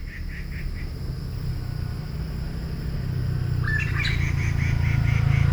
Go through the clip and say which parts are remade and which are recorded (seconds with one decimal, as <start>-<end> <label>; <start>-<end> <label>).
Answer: 0.0-5.5 recorded